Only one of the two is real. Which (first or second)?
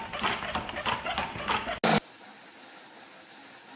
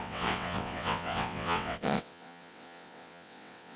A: first